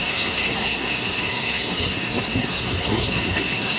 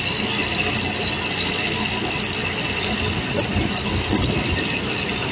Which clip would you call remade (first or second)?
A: first